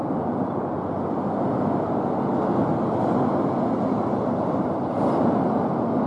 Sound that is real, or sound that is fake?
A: real